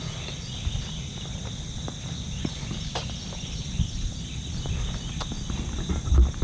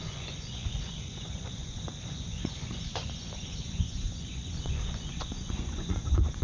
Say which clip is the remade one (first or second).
second